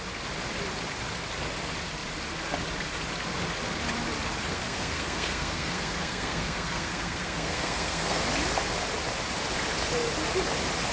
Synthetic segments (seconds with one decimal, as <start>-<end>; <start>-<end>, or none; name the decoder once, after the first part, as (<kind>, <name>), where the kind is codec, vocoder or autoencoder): 4.5-8.2 (codec, SNAC)